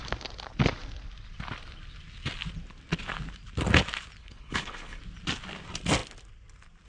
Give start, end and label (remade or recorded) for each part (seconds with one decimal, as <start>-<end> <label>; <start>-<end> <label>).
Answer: 0.0-4.2 recorded; 4.2-5.0 remade; 5.0-6.9 recorded